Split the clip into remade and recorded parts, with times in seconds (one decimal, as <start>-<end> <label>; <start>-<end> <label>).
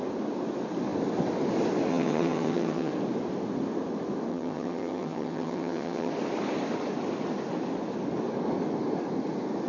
0.0-1.9 recorded; 1.9-2.9 remade; 2.9-4.3 recorded; 4.3-6.1 remade; 6.1-9.7 recorded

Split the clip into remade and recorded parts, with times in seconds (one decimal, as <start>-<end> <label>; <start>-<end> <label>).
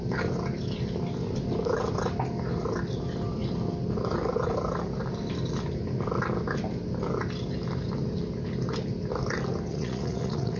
0.0-9.7 recorded; 9.7-10.6 remade